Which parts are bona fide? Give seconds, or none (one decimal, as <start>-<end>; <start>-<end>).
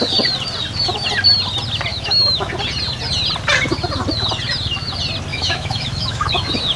0.0-1.9; 2.5-5.3; 6.3-6.8